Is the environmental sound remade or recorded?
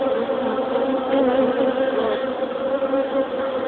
remade